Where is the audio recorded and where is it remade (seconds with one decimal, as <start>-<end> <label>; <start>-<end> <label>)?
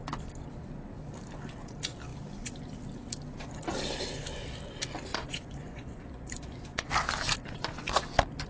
0.0-5.1 recorded; 5.1-6.9 remade; 6.9-8.5 recorded